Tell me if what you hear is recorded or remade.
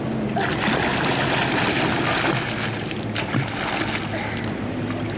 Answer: recorded